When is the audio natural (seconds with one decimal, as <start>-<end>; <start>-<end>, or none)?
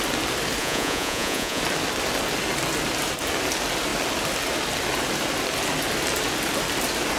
0.0-0.6; 1.6-7.2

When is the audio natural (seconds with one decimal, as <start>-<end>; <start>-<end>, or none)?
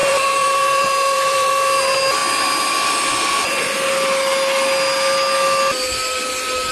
1.5-6.7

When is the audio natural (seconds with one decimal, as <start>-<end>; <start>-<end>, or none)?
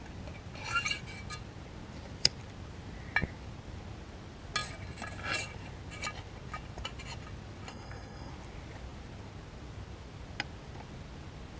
0.0-7.7; 8.3-11.6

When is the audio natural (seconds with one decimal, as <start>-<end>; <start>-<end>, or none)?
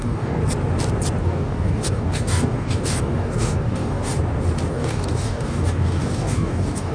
0.4-1.2; 4.1-4.7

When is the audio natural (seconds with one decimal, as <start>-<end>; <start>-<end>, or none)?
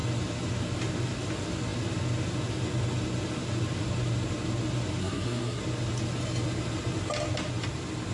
0.0-5.0; 5.6-8.1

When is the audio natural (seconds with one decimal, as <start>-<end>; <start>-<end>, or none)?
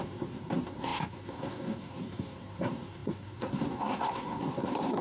none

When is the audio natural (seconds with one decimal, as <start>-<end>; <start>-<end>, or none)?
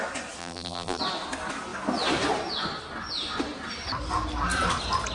0.0-0.4; 1.0-5.1